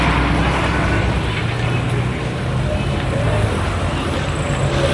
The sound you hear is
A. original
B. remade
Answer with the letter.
A